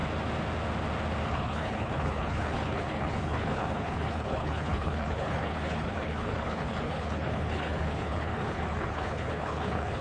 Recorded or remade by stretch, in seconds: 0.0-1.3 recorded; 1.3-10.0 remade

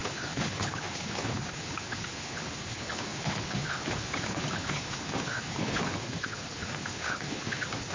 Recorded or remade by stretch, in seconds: 0.0-7.9 remade

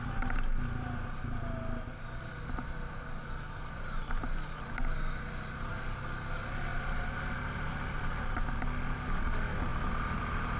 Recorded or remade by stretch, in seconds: 0.0-10.6 recorded